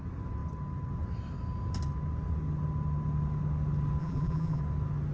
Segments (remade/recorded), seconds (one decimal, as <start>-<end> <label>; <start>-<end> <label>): 0.0-4.0 recorded; 4.0-4.6 remade; 4.6-5.1 recorded